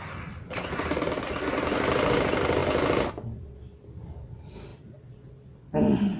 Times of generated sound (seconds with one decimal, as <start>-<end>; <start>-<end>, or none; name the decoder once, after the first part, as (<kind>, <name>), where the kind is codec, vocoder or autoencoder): none

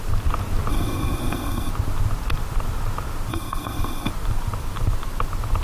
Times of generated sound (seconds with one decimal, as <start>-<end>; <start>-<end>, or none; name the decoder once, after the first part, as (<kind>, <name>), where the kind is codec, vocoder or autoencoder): 0.7-1.7 (codec, SNAC); 3.3-4.1

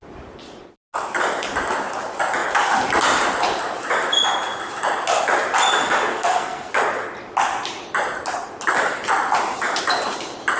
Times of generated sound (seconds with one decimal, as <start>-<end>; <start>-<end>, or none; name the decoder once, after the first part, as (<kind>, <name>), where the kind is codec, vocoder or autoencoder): 6.1-6.7 (codec, SNAC)

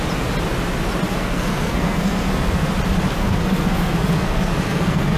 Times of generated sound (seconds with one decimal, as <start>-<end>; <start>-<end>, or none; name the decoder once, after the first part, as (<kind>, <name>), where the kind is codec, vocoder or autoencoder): 1.1-2.7 (codec, SNAC); 3.2-5.2